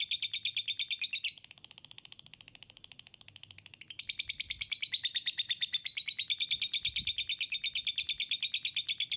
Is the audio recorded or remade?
recorded